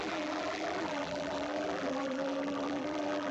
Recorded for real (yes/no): no